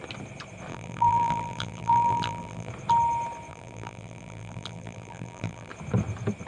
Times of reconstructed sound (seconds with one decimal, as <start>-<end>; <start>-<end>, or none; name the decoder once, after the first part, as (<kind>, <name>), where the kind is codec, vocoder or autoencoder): 0.7-2.7 (vocoder, BigVGAN v2); 3.5-5.7